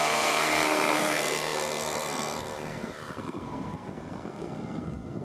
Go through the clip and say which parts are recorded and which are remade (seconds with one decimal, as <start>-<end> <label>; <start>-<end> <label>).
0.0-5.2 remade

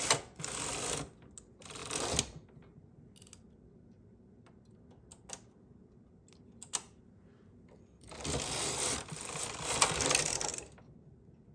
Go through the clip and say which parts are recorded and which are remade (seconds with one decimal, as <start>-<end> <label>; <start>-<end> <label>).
0.0-11.5 recorded

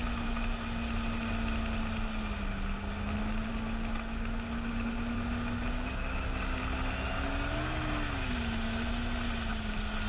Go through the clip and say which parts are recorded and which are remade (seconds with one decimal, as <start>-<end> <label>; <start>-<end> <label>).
0.0-10.1 recorded

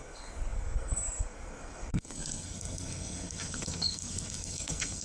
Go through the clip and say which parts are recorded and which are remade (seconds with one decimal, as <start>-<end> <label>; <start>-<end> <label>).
0.0-5.0 remade

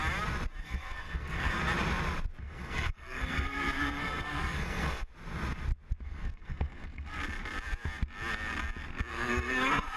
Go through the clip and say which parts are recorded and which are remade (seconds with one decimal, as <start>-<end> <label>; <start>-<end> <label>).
0.0-0.6 recorded; 0.6-1.6 remade; 1.6-2.4 recorded; 2.4-5.1 remade; 5.1-6.0 recorded; 6.0-7.2 remade; 7.2-9.1 recorded; 9.1-10.0 remade

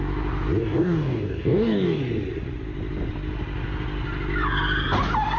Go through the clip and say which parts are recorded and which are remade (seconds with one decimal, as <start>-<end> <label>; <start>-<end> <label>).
0.0-0.6 recorded; 0.6-2.0 remade; 2.0-5.4 recorded

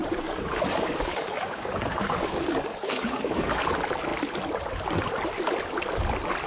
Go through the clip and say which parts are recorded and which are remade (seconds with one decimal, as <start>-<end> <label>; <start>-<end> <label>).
0.0-3.6 remade; 3.6-6.5 recorded

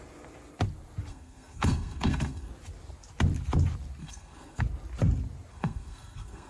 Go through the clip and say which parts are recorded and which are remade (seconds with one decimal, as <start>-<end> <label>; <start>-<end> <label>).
0.0-1.1 recorded; 1.1-2.5 remade; 2.5-4.0 recorded; 4.0-4.6 remade; 4.6-5.5 recorded; 5.5-6.5 remade